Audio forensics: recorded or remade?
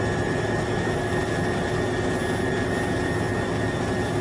recorded